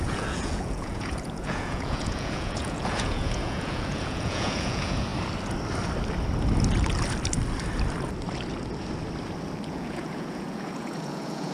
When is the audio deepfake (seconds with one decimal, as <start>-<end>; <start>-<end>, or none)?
0.0-5.1; 9.7-11.5